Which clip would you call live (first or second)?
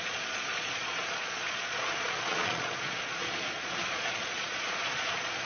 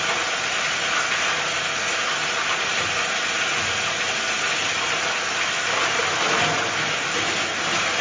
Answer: second